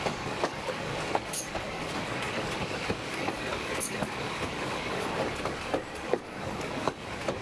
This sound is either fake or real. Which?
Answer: fake